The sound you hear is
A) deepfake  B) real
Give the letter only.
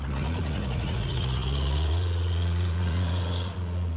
A